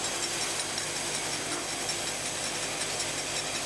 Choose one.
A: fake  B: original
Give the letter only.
B